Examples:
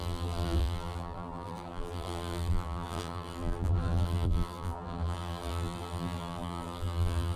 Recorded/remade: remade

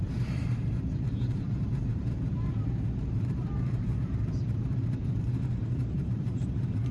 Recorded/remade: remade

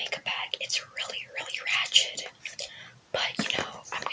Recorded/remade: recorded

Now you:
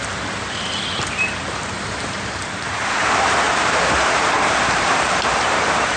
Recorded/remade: remade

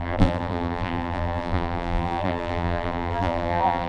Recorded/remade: remade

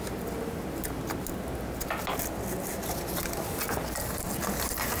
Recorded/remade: recorded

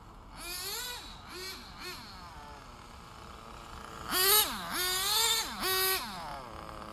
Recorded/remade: recorded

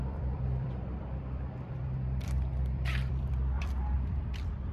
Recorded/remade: remade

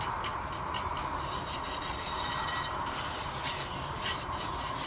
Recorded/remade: remade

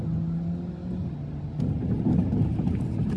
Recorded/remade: recorded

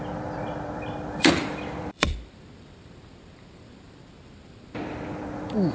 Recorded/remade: remade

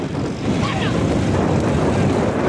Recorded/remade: recorded